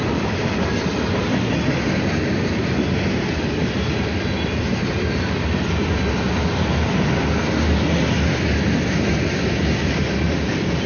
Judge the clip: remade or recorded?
recorded